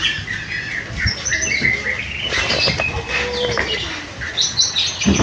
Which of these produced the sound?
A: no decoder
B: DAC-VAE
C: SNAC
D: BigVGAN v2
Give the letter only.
A